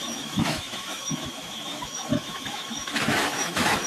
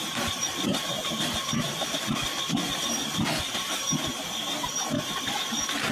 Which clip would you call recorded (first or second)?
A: second